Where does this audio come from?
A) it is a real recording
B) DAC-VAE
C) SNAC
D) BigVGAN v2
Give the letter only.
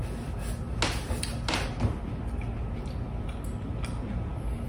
A